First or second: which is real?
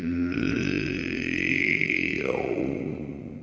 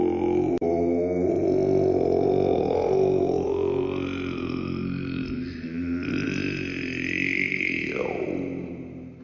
second